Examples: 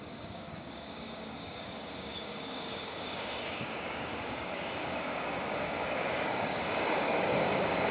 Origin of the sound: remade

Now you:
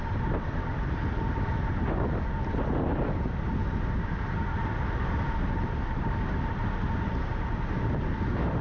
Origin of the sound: recorded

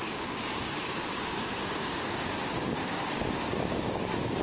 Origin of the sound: remade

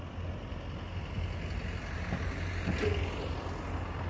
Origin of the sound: recorded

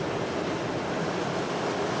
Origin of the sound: recorded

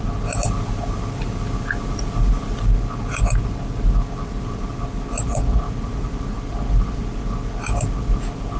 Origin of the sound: recorded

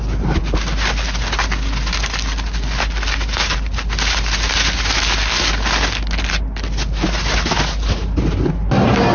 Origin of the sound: recorded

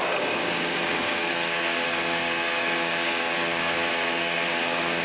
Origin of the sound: remade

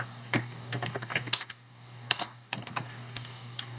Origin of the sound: remade